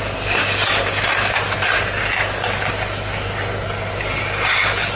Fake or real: real